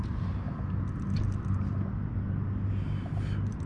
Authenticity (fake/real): real